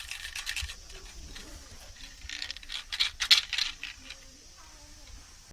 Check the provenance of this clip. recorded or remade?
recorded